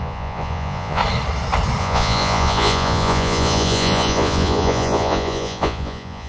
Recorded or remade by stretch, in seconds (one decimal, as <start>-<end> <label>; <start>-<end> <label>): 0.0-1.0 remade; 1.0-1.8 recorded; 1.8-6.3 remade